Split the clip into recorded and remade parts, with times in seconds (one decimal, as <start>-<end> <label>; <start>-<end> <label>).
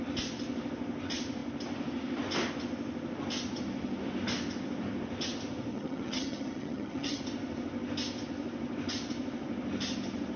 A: 0.0-5.7 recorded; 5.7-7.2 remade; 7.2-10.4 recorded